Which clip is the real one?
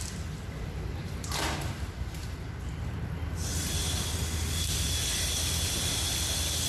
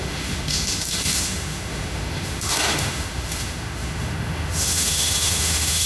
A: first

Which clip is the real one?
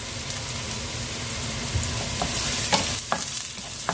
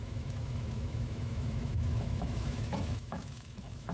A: first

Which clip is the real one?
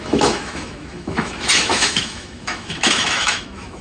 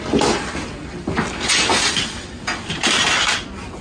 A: second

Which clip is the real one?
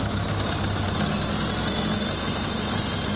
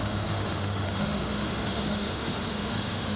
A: first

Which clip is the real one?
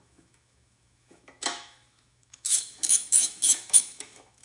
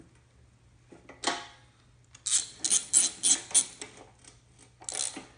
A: second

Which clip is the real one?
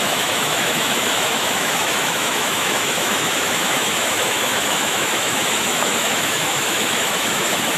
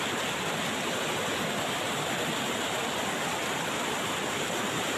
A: second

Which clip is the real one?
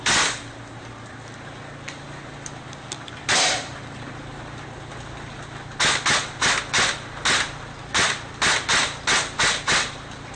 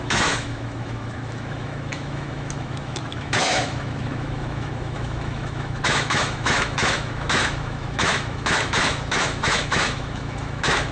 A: first